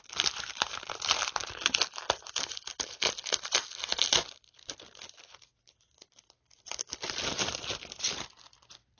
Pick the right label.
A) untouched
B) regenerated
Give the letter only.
A